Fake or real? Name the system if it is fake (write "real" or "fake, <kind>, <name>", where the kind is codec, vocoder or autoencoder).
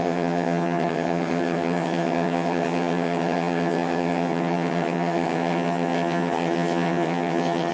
fake, vocoder, HiFi-GAN